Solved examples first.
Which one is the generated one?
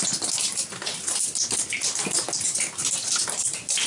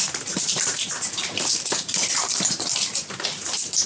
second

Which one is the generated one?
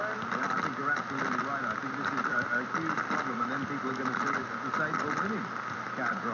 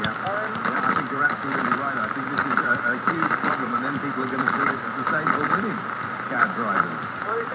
second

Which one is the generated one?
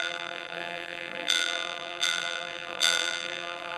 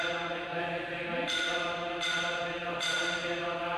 first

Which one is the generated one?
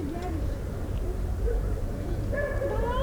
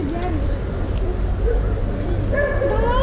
first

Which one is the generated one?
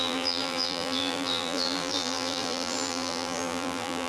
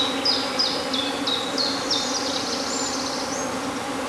first